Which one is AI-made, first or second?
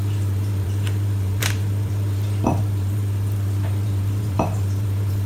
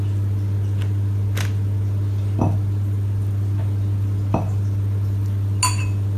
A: first